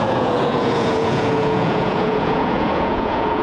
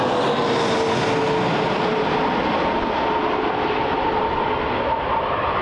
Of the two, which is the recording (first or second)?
second